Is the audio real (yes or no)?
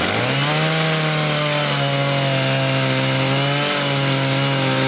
yes